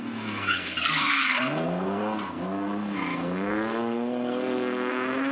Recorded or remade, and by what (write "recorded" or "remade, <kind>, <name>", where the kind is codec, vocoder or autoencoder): remade, codec, SNAC